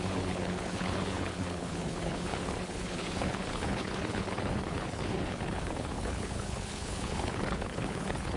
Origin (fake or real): fake